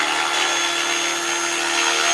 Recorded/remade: recorded